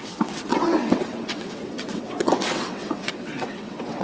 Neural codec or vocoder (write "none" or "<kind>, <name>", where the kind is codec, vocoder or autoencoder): vocoder, WaveNeXt